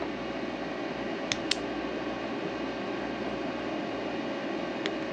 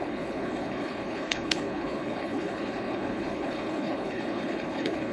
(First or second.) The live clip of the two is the first